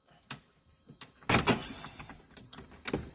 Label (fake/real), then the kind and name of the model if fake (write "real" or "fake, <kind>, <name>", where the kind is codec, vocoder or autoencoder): real